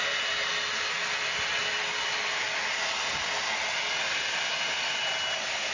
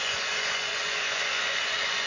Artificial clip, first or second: second